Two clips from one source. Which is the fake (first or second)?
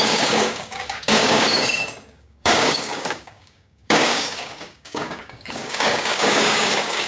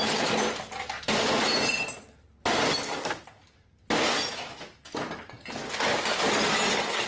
first